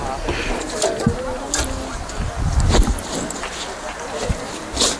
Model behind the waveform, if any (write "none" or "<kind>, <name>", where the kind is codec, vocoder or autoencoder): none